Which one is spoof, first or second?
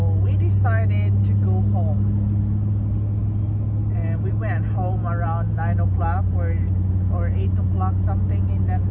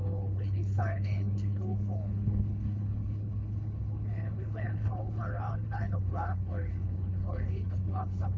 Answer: second